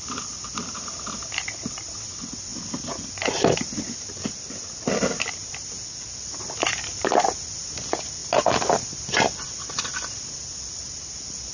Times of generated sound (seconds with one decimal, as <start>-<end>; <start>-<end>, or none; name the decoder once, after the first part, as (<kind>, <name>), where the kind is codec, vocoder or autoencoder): none